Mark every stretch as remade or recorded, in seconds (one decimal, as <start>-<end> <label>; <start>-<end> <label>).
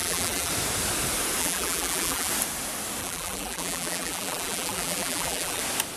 0.0-0.5 remade; 0.5-1.4 recorded; 1.4-2.3 remade; 2.3-3.0 recorded; 3.0-5.6 remade; 5.6-6.0 recorded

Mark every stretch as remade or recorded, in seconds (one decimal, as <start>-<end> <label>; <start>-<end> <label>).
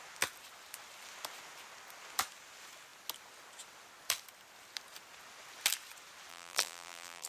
0.0-6.3 recorded; 6.3-7.3 remade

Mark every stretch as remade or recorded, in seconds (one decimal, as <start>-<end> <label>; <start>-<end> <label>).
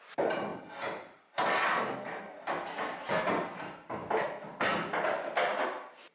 0.0-0.5 remade; 0.5-3.2 recorded; 3.2-4.0 remade; 4.0-6.1 recorded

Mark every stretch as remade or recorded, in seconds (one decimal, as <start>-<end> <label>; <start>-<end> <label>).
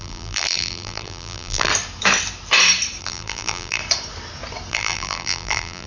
0.0-1.7 remade; 1.7-3.0 recorded; 3.0-3.8 remade; 3.8-4.7 recorded; 4.7-5.9 remade